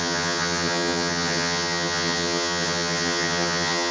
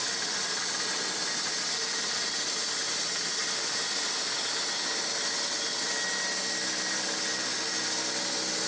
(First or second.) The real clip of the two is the second